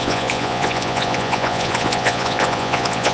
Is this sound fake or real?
fake